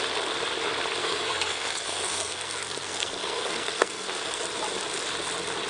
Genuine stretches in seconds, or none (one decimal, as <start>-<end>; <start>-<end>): 0.0-1.0; 4.4-5.7